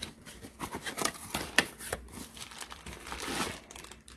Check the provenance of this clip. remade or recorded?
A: remade